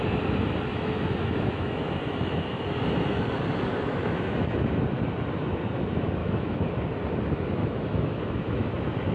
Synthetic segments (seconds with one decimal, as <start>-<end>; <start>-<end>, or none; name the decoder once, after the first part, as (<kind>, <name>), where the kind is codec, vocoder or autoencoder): 0.7-2.8 (autoencoder, DAC-VAE); 4.0-4.8; 6.2-6.7; 7.6-8.7